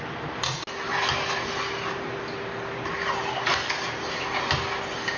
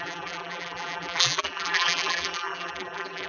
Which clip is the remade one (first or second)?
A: second